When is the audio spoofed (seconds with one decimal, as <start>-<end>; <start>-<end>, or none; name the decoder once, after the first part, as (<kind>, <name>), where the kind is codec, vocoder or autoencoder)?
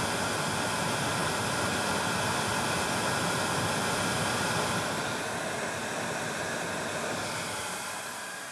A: none